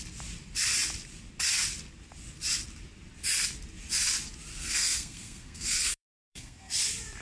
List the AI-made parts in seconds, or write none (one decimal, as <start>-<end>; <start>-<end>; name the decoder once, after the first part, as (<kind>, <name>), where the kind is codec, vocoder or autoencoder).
4.5-6.7 (codec, SNAC)